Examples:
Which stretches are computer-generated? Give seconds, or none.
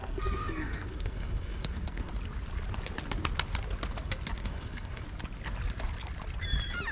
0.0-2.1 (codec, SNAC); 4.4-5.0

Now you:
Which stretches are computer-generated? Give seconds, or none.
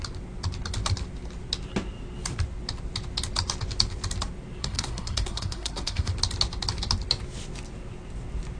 4.6-6.1 (codec, SNAC)